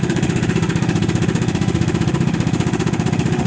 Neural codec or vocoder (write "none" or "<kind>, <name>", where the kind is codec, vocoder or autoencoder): autoencoder, DAC-VAE